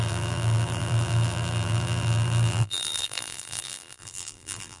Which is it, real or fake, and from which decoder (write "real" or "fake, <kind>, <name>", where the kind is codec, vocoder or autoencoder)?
fake, vocoder, BigVGAN v2